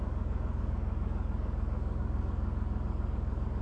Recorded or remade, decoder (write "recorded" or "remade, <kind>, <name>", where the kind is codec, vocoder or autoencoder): remade, codec, DAC